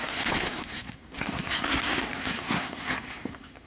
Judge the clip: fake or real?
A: fake